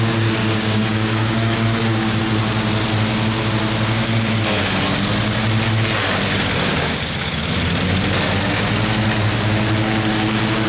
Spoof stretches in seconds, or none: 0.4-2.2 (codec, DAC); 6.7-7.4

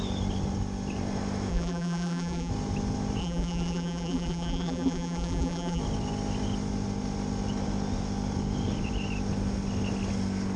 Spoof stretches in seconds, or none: 1.5-2.5 (vocoder, BigVGAN v2); 3.2-5.8

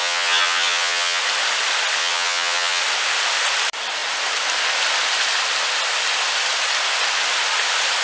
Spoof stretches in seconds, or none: 0.0-1.2 (vocoder, HiFi-GAN); 2.0-2.8

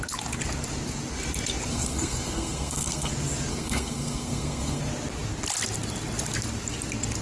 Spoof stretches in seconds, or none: 1.7-3.1 (codec, SNAC); 3.5-4.8